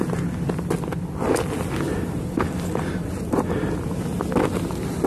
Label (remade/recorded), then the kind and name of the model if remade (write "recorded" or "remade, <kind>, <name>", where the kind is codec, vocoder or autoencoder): recorded